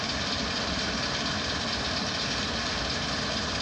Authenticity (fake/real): real